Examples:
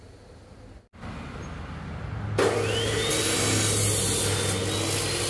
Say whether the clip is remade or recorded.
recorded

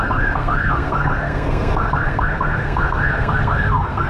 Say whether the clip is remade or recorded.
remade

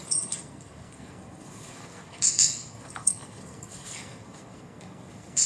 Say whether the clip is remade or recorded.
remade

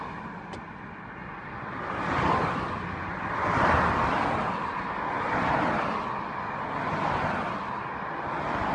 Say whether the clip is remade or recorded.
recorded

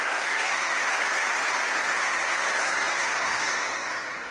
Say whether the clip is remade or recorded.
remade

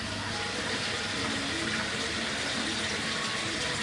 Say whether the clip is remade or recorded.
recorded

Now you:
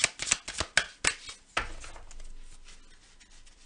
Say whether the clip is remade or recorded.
recorded